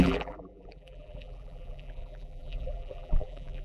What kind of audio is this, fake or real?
fake